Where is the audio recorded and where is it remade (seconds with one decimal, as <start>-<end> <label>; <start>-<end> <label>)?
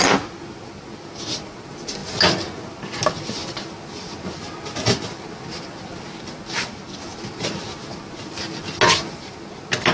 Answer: 0.0-9.9 recorded